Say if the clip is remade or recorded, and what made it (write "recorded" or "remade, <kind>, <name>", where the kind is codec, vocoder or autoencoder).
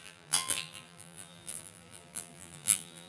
remade, vocoder, BigVGAN v2